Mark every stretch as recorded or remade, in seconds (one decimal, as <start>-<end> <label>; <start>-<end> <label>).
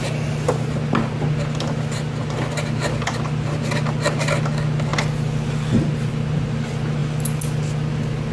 0.0-8.3 recorded